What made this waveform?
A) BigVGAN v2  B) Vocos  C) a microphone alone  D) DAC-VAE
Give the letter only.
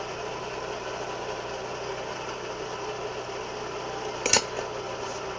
C